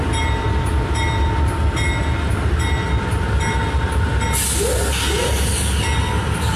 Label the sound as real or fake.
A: real